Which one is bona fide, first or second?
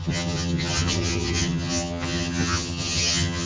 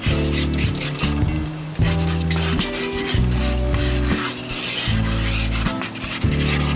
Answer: second